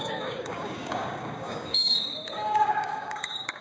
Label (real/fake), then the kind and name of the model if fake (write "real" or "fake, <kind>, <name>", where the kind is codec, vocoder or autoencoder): fake, codec, DAC